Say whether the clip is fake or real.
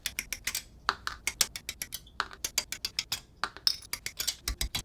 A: real